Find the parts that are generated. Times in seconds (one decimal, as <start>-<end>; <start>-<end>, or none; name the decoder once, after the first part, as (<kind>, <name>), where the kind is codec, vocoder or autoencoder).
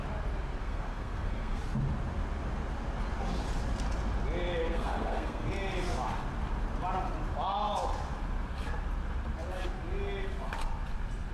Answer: 0.6-1.6 (codec, SNAC); 4.6-5.5